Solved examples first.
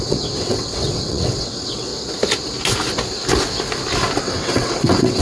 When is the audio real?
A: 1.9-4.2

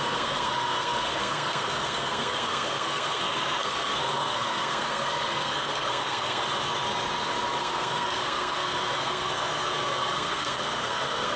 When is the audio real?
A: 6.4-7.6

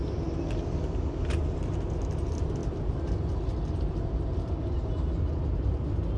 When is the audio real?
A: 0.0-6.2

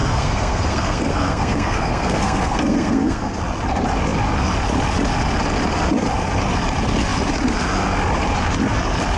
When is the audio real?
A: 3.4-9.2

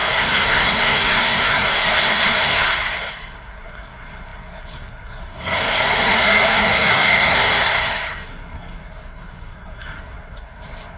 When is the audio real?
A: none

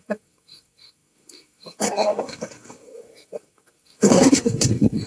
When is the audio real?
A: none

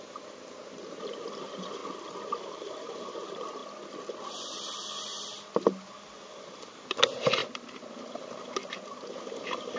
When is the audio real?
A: 1.8-2.5; 3.6-6.4; 8.6-9.1

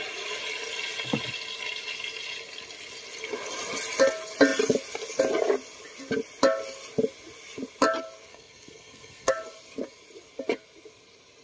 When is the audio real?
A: 0.0-8.3; 9.3-11.4